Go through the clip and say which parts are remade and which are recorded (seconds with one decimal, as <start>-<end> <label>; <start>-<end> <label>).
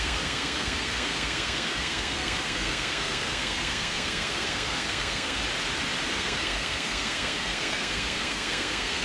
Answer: 0.0-5.4 remade; 5.4-6.1 recorded; 6.1-9.0 remade